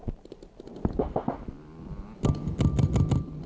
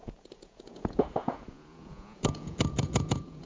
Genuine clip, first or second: first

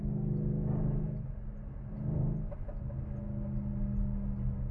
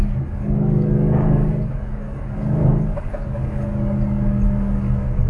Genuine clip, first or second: first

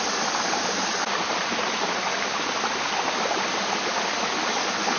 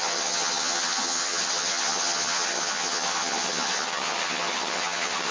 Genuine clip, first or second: first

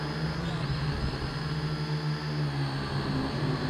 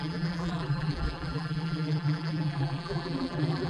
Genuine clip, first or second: first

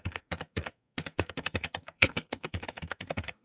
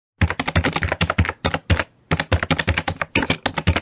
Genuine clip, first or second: second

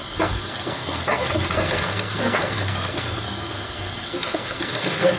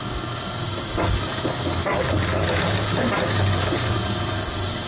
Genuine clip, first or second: second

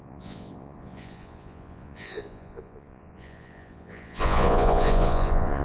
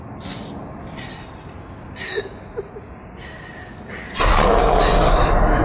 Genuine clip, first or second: second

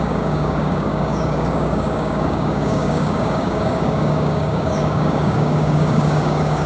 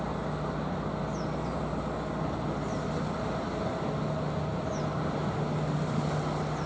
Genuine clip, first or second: second